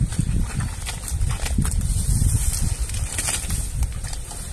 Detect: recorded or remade recorded